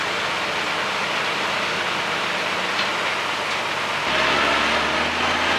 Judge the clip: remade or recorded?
recorded